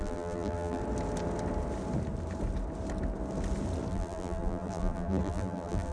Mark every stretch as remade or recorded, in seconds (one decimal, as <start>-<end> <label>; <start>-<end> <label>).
0.0-0.8 remade; 0.8-3.9 recorded; 3.9-5.9 remade